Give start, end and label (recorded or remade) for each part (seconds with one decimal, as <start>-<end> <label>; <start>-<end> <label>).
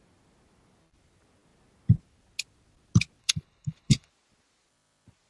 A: 0.0-3.2 recorded; 3.2-4.1 remade; 4.1-5.3 recorded